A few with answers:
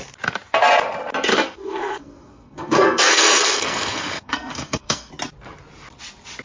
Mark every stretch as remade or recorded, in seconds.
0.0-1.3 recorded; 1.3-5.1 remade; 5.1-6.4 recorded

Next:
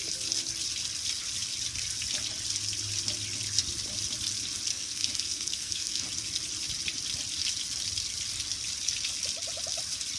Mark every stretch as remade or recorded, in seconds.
0.0-4.7 recorded; 4.7-6.1 remade; 6.1-10.2 recorded